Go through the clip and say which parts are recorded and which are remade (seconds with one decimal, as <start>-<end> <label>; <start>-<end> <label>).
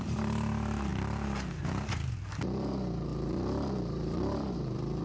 0.0-5.0 remade